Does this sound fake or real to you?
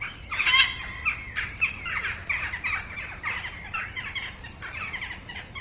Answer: real